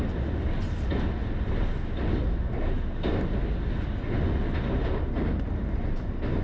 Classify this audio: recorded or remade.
recorded